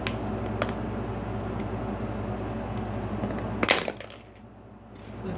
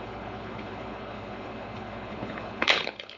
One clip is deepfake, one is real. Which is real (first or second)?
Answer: first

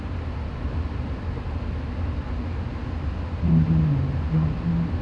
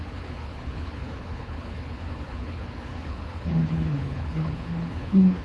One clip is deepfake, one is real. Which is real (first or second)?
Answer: first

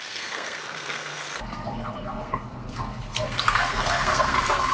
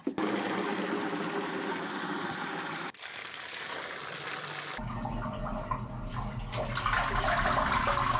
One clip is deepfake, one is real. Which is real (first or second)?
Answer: second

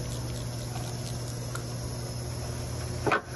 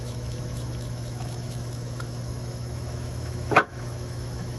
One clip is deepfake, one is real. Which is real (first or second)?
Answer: first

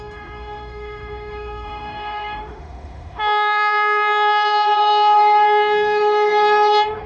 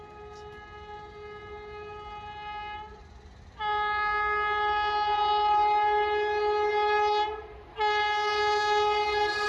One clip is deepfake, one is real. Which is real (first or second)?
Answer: second